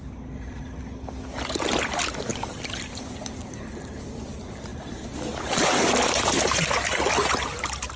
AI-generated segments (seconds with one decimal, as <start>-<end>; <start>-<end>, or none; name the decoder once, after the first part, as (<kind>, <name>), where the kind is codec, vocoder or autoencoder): none